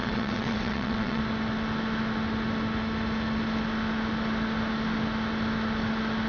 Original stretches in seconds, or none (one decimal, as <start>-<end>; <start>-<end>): 1.2-6.3